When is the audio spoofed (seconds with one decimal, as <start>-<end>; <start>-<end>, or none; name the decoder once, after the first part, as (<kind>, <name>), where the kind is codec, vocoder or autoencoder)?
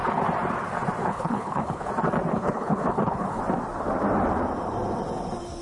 1.0-1.9 (codec, HILCodec); 2.3-3.4